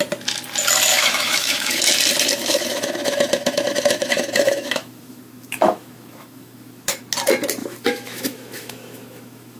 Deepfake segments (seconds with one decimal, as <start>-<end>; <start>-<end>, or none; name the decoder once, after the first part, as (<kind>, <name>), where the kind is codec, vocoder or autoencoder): 0.9-1.8 (autoencoder, DAC-VAE); 2.4-7.0; 7.6-9.6

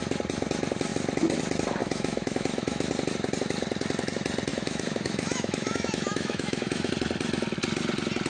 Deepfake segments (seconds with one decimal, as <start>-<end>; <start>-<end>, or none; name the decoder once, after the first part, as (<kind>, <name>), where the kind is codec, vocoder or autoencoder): 1.8-2.9 (autoencoder, DAC-VAE); 4.5-6.9

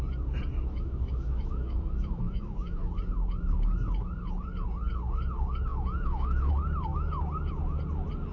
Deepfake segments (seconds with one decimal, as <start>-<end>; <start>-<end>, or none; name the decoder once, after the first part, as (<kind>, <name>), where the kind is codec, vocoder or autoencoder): 0.5-2.9 (autoencoder, DAC-VAE); 5.7-6.5

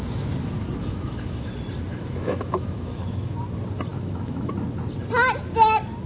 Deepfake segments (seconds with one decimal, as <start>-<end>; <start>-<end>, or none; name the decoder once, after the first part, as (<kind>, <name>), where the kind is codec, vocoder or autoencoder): 0.8-1.5 (autoencoder, DAC-VAE); 1.9-3.3; 3.9-4.5

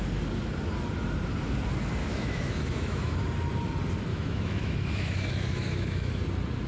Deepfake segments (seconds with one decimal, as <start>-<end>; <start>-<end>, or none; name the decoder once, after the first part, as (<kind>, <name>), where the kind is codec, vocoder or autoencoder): 2.0-3.2 (autoencoder, DAC-VAE); 4.1-6.1

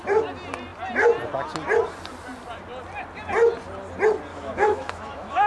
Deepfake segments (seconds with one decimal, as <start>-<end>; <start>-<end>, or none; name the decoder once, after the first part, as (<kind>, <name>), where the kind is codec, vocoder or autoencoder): 4.3-5.5 (autoencoder, DAC-VAE)